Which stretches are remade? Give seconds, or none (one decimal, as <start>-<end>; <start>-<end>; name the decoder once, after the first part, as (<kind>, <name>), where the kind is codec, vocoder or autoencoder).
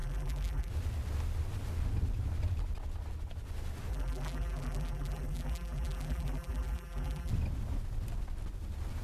0.0-0.7 (vocoder, BigVGAN v2); 3.9-7.3